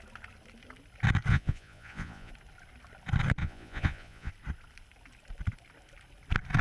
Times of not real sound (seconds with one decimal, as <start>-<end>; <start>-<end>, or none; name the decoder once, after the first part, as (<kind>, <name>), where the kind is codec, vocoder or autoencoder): 1.3-2.3 (vocoder, Vocos); 3.4-4.3